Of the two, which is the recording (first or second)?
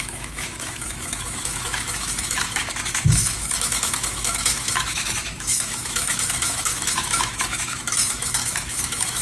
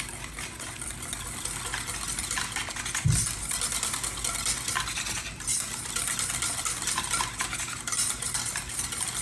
second